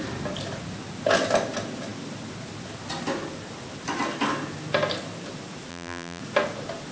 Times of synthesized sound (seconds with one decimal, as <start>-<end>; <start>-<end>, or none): 5.7-6.2